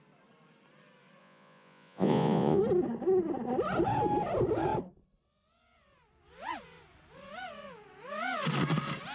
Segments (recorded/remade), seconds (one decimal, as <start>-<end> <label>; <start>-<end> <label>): 0.0-1.2 recorded; 1.2-2.6 remade; 2.6-9.1 recorded